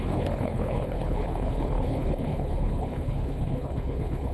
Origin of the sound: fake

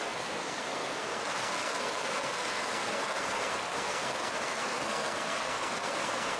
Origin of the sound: fake